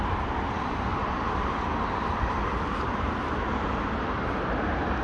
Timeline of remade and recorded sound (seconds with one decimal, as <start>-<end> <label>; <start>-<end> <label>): 0.0-5.0 remade